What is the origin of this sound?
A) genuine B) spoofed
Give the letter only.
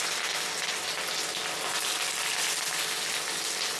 A